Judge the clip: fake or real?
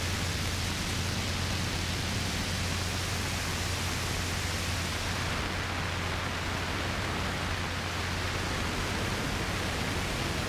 real